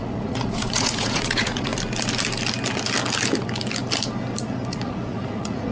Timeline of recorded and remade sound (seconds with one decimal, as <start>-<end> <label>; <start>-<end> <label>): 0.0-1.7 remade; 1.7-4.7 recorded; 4.7-5.7 remade